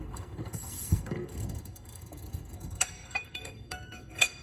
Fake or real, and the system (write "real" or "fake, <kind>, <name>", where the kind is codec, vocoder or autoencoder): fake, codec, SNAC